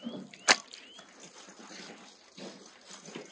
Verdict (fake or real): real